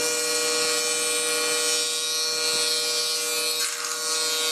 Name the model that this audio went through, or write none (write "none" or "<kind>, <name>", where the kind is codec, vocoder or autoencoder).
none